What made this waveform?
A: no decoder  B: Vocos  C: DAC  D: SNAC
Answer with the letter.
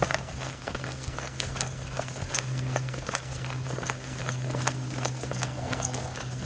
D